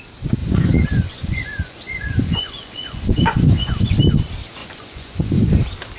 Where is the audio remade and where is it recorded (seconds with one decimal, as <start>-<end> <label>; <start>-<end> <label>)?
0.0-0.4 recorded; 0.4-4.0 remade; 4.0-4.6 recorded; 4.6-5.4 remade; 5.4-6.0 recorded